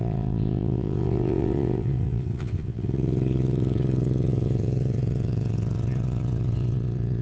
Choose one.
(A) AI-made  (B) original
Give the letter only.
A